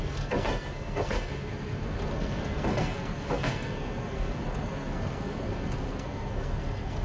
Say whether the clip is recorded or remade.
remade